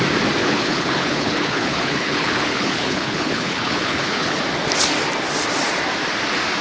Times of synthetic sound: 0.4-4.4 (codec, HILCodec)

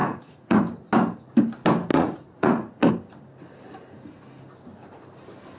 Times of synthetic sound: 0.0-0.6 (vocoder, Vocos); 1.9-2.9

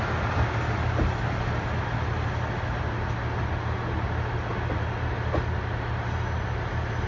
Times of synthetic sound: none

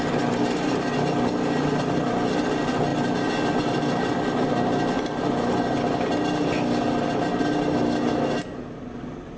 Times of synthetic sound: none

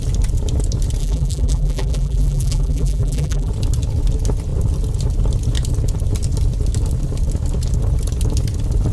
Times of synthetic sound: 1.0-3.5 (vocoder, BigVGAN v2)

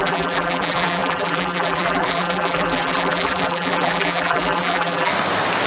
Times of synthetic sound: 0.0-5.1 (vocoder, BigVGAN v2)

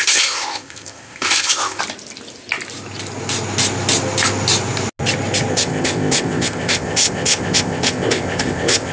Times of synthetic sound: 0.0-1.8 (codec, ZipCodec); 5.5-8.9